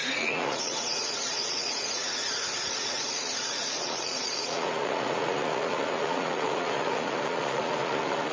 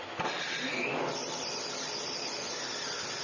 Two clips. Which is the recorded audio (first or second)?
second